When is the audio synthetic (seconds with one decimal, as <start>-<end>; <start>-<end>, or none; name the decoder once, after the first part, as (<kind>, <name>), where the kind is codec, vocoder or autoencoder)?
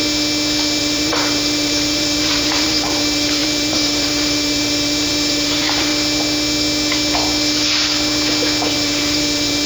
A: 0.8-5.9 (vocoder, BigVGAN v2); 8.7-9.7